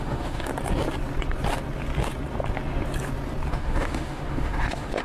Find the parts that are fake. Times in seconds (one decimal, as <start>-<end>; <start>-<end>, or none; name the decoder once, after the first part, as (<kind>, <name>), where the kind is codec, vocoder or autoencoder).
0.0-0.5 (autoencoder, DAC-VAE); 3.5-5.0